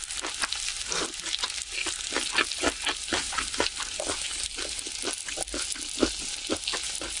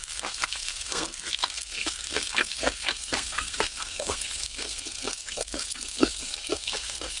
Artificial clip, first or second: second